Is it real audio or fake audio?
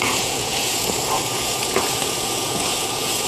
fake